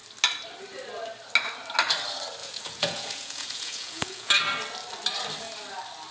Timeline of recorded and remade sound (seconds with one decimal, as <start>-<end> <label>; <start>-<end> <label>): 0.0-2.4 recorded; 2.4-4.3 remade; 4.3-6.1 recorded